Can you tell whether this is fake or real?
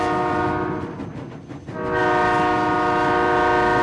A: real